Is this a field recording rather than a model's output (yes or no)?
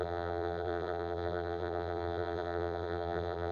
no